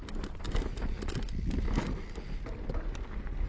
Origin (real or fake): real